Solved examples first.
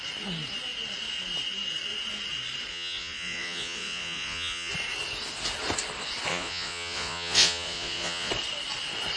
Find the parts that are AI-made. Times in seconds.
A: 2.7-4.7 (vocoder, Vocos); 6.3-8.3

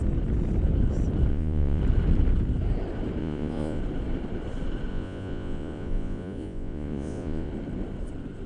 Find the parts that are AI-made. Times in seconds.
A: 1.3-1.8 (vocoder, Vocos); 3.2-3.8; 4.9-7.5

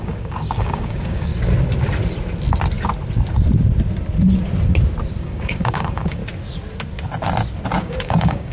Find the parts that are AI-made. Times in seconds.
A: 0.0-1.3 (codec, DAC); 5.2-6.2; 7.8-8.5

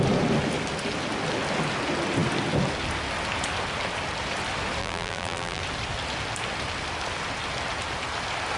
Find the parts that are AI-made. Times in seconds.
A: 4.8-5.6 (vocoder, BigVGAN v2)